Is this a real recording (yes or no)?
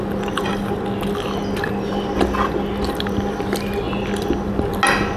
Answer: yes